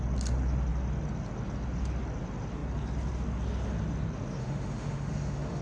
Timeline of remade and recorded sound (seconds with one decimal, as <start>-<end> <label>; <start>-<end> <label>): 0.0-4.4 recorded; 4.4-5.6 remade